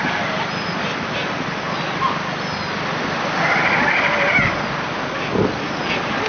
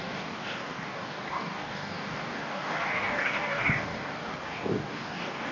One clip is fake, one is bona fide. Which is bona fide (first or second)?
first